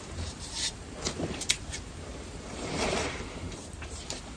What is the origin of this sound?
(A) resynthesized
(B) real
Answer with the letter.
A